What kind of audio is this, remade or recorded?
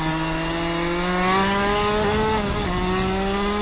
recorded